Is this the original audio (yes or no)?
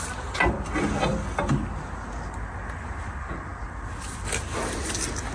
yes